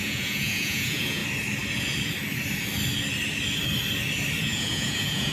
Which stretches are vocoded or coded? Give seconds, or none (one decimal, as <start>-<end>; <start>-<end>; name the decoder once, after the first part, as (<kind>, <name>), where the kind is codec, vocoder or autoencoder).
0.0-1.2 (vocoder, Vocos); 4.4-5.3